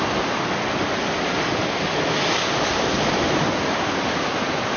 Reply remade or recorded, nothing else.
recorded